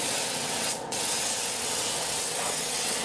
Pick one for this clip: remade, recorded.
remade